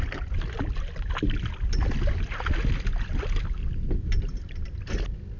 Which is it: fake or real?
real